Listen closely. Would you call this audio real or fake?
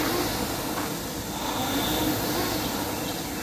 real